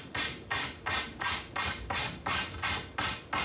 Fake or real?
real